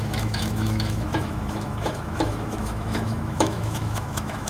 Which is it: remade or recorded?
remade